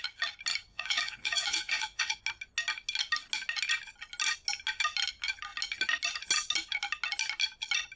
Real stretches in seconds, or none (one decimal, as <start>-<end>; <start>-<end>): 0.0-0.7; 2.2-8.0